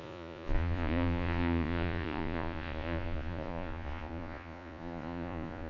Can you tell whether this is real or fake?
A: fake